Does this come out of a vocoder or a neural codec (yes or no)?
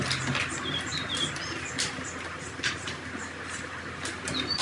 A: no